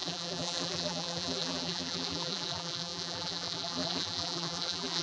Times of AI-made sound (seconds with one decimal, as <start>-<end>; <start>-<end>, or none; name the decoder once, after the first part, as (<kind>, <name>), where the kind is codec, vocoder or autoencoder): 0.0-5.0 (vocoder, BigVGAN v2)